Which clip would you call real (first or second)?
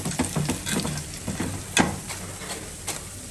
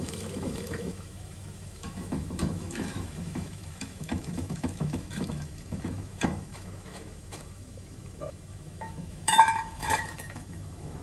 first